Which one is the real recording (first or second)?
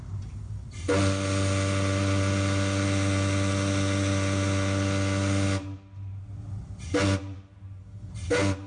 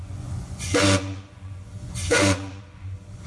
first